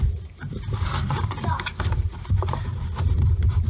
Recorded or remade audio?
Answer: remade